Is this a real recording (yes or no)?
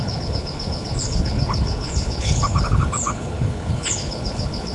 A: no